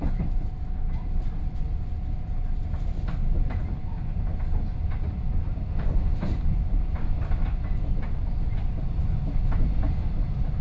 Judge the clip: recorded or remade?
recorded